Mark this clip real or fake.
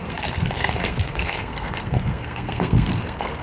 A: fake